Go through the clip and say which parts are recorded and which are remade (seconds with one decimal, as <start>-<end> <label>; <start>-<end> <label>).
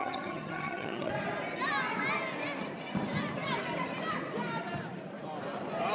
0.0-1.1 remade; 1.1-5.9 recorded